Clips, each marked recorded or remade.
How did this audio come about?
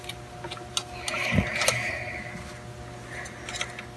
recorded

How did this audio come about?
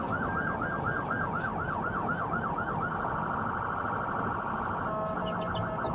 recorded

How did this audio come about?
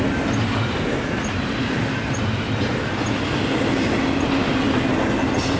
recorded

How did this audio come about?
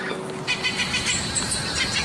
recorded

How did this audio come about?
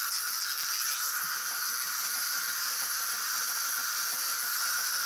recorded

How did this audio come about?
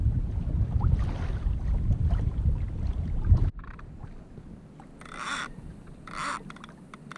recorded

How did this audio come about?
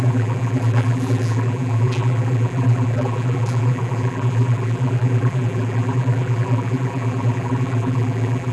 remade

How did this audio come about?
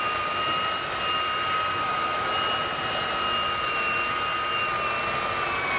recorded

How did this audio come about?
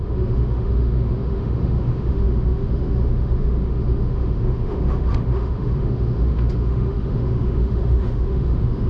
remade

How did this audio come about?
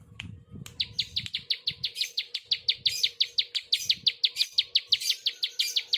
recorded